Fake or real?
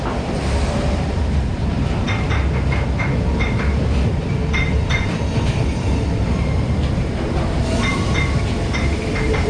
fake